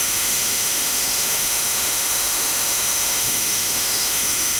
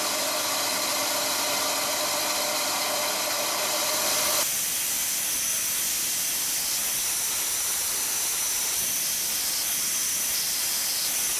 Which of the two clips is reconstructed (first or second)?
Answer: first